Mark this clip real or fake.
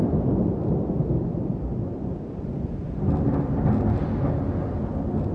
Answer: real